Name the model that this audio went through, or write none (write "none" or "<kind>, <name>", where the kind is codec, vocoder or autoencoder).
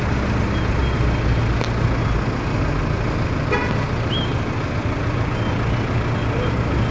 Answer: none